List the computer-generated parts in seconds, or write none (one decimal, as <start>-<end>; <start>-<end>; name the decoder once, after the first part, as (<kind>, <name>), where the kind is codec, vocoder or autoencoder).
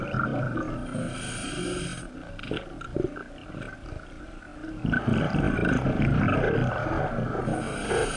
none